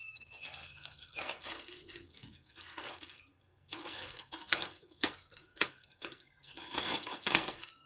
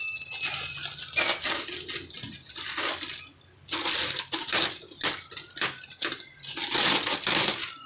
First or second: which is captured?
second